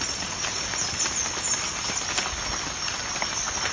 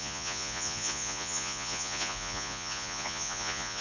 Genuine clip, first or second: first